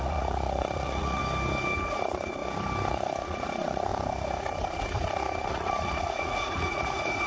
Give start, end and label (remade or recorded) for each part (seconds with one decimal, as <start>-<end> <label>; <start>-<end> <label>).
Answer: 0.0-1.2 remade; 1.2-1.9 recorded; 1.9-2.4 remade; 2.4-2.9 recorded; 2.9-3.9 remade; 3.9-5.5 recorded; 5.5-7.3 remade